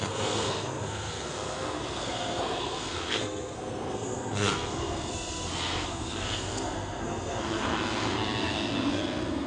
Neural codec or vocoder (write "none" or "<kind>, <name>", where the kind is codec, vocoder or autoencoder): codec, SNAC